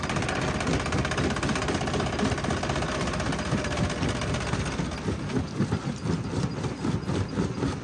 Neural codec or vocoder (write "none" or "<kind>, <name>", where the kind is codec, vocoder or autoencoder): none